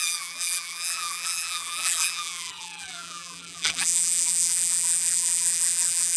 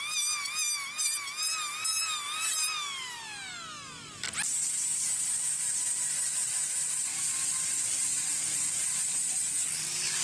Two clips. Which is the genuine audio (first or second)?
second